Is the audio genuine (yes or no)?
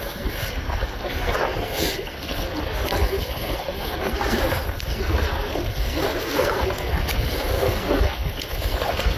no